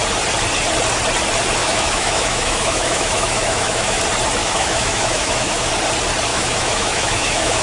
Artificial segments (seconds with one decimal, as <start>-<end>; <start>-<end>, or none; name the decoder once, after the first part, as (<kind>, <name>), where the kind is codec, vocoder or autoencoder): 1.6-4.0 (autoencoder, DAC-VAE); 4.4-5.7; 6.3-7.6